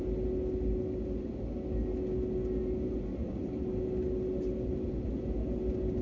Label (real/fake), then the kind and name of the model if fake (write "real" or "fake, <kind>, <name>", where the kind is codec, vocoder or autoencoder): real